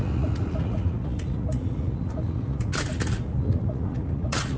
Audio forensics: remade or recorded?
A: remade